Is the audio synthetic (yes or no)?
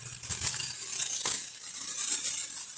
no